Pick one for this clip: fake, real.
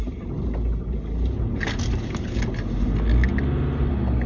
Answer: real